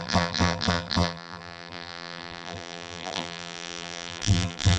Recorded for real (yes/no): no